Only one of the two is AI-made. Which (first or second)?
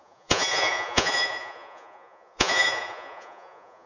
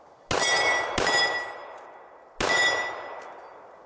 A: first